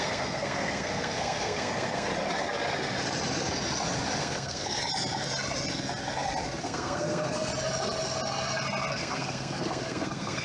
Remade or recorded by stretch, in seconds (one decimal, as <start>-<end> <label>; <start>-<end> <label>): 0.0-2.1 remade; 2.1-4.2 recorded; 4.2-4.8 remade; 4.8-6.6 recorded; 6.6-7.5 remade; 7.5-8.9 recorded; 8.9-10.4 remade